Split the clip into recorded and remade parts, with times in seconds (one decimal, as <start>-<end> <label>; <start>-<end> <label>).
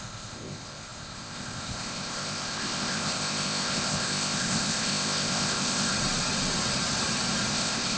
0.0-5.9 remade; 5.9-7.5 recorded; 7.5-8.0 remade